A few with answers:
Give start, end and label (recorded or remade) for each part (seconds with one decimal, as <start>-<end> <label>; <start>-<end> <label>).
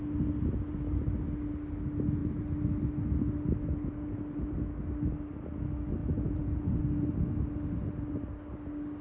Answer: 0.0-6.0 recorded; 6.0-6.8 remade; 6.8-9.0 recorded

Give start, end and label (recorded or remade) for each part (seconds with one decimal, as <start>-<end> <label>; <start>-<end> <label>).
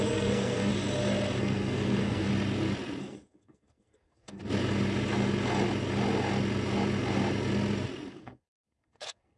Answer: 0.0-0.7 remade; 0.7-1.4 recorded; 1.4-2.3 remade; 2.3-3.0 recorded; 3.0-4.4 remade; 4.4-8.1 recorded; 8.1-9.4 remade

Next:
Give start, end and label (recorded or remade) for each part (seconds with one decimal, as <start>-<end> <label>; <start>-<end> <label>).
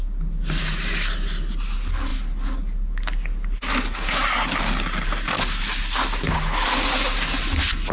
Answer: 0.0-7.9 recorded